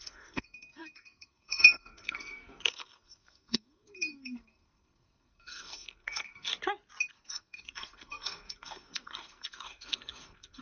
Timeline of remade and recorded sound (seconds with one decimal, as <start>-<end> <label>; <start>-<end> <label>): 0.0-6.5 remade; 6.5-7.1 recorded; 7.1-10.6 remade